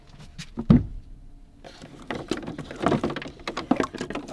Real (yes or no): yes